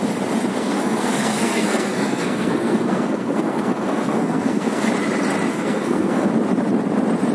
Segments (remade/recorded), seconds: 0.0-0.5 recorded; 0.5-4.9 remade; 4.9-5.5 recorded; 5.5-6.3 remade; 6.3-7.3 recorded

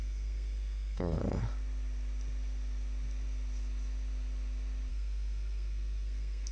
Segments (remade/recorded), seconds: 0.0-1.2 remade; 1.2-4.9 recorded; 4.9-6.5 remade

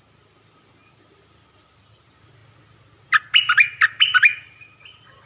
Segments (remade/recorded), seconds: 0.0-5.3 recorded

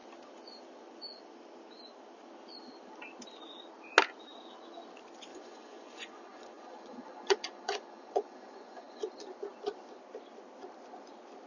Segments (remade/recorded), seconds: 0.0-5.3 recorded; 5.3-9.1 remade; 9.1-11.5 recorded

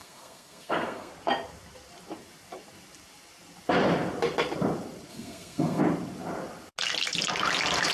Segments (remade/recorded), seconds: 0.0-1.1 remade; 1.1-5.1 recorded; 5.1-5.8 remade; 5.8-7.9 recorded

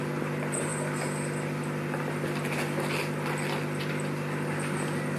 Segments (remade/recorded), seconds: 0.0-5.2 recorded